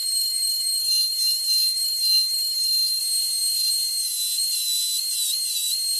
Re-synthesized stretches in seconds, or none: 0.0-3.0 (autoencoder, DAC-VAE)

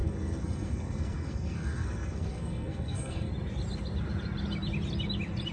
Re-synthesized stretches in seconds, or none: 0.0-3.3 (codec, SNAC)

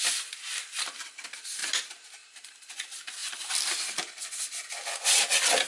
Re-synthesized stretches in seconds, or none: 1.6-2.6 (vocoder, BigVGAN v2)